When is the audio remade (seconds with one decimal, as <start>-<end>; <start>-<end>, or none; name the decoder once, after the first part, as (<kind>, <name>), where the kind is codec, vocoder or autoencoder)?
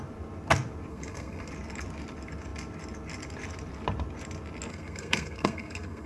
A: 0.9-1.5 (codec, SNAC); 4.7-6.1